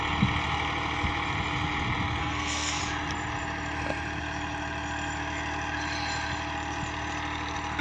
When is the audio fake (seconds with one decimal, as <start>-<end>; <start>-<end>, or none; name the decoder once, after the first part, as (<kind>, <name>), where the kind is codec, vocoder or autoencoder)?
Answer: 2.2-2.8 (codec, SNAC)